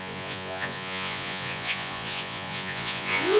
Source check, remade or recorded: remade